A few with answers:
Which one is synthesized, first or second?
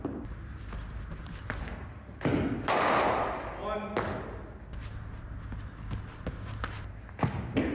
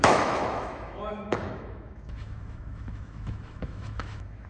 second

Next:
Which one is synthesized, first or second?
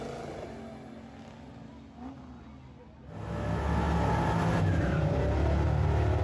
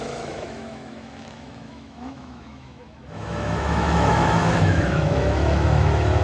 second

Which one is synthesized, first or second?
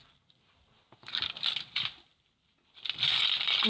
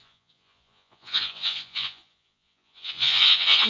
second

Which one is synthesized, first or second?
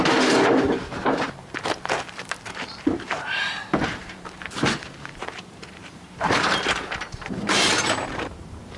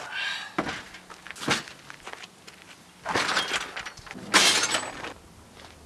first